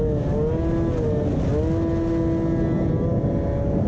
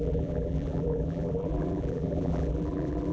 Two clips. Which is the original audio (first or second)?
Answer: first